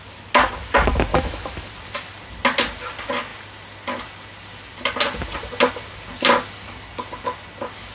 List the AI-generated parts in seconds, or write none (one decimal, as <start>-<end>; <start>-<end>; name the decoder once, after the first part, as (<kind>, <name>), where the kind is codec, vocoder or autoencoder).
1.1-1.7 (autoencoder, DAC-VAE)